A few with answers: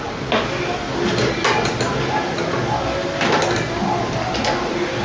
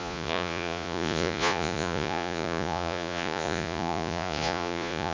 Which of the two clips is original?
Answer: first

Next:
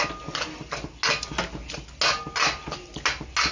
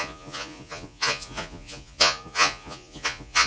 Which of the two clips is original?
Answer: first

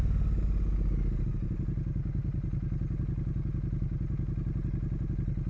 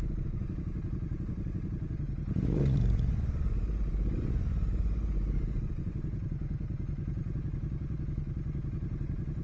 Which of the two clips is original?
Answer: first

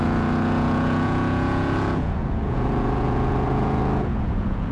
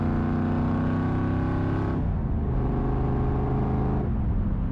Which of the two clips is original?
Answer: second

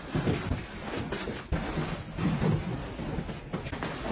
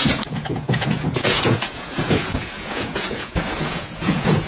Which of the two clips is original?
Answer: first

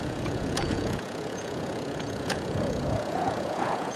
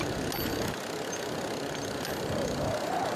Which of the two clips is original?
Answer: second